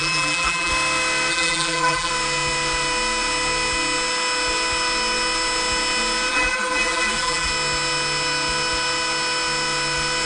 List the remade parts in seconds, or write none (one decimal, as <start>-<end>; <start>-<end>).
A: 0.0-0.7; 1.3-2.1; 6.3-7.5